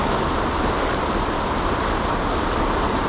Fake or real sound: real